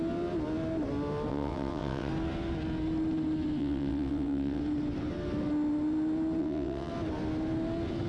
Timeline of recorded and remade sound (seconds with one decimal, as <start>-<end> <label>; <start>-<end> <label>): 0.0-1.3 recorded; 1.3-2.1 remade; 2.1-3.6 recorded; 3.6-4.6 remade; 4.6-6.4 recorded; 6.4-6.9 remade; 6.9-8.1 recorded